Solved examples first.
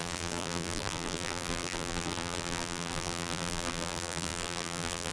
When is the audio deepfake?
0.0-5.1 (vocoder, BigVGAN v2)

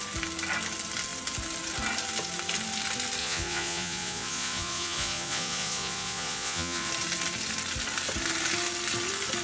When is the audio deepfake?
3.2-6.9 (vocoder, Vocos)

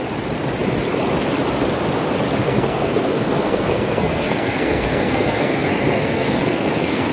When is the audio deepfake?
2.4-7.1 (codec, SNAC)

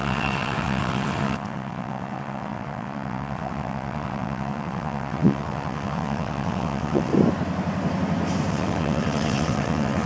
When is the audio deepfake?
0.0-7.1 (vocoder, WaveNeXt); 8.5-10.1

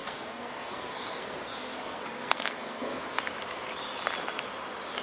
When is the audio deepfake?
0.0-3.0 (codec, SNAC)

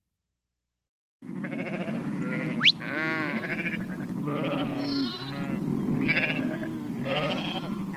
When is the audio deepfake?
none

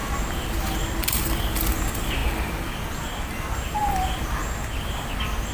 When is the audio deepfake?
none

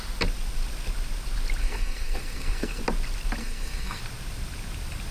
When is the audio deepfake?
1.6-2.8 (codec, SNAC); 3.4-4.0